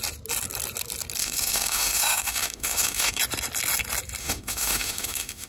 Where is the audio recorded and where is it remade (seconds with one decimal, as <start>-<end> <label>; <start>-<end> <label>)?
0.0-1.2 recorded; 1.2-3.2 remade; 3.2-4.2 recorded; 4.2-5.5 remade